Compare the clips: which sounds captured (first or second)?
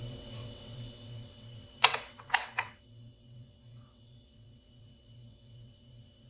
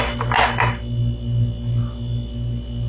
second